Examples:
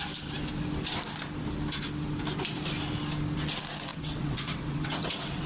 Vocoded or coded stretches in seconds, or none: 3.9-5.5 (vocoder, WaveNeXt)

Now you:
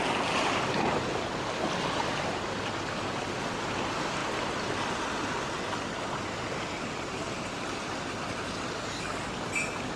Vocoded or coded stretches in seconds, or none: none